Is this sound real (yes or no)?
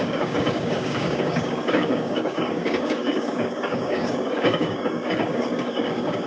no